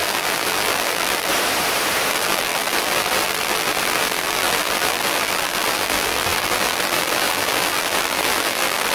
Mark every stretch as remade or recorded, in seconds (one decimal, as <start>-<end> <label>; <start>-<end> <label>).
0.0-1.3 remade; 1.3-2.1 recorded; 2.1-8.9 remade

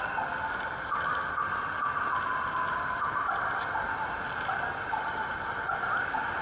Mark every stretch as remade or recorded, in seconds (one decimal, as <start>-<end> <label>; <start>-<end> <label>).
0.0-6.4 recorded